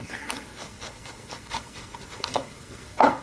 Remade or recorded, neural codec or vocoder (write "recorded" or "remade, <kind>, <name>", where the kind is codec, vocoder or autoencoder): remade, codec, SNAC